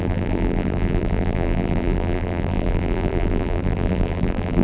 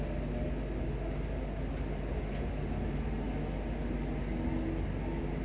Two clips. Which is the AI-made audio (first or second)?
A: first